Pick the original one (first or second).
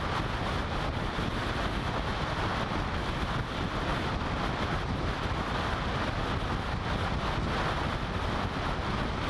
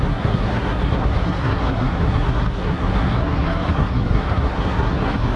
first